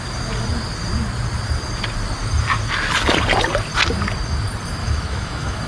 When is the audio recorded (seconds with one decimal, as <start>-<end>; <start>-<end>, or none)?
0.0-4.8

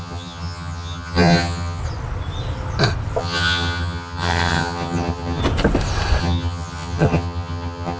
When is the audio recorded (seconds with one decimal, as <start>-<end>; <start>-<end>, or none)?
1.8-3.2; 5.4-6.2